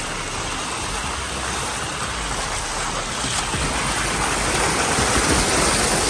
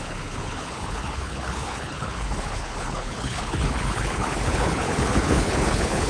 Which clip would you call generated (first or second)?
second